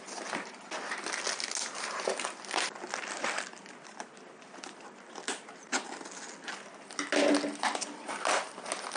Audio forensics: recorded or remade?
recorded